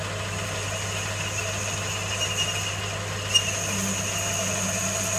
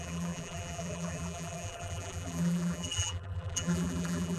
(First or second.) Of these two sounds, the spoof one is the second